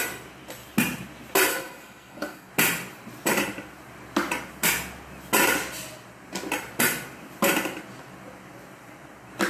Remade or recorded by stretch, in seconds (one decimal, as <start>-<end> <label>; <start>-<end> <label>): 0.0-1.5 recorded; 1.5-2.5 remade; 2.5-9.5 recorded